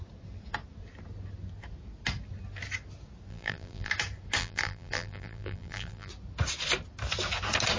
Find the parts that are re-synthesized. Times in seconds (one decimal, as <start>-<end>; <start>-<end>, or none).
3.3-3.9; 4.4-6.1